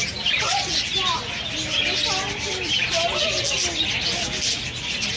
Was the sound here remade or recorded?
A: recorded